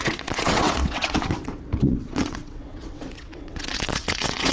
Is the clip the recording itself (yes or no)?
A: no